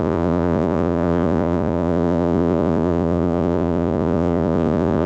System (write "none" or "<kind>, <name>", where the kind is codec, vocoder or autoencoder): vocoder, Vocos